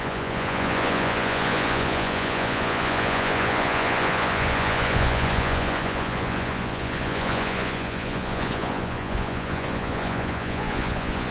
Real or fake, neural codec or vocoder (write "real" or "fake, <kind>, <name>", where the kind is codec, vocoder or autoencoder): fake, vocoder, Vocos